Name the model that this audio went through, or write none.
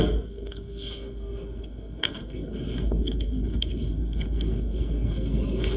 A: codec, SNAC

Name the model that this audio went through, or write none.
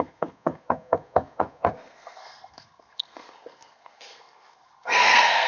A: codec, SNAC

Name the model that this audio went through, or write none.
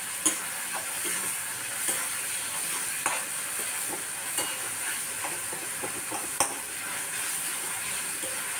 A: none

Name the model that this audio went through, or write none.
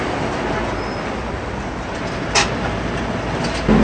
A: none